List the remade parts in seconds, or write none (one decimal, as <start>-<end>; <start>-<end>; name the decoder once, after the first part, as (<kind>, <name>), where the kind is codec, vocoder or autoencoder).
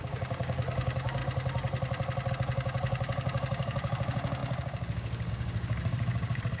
0.0-1.2 (codec, DAC); 2.3-6.6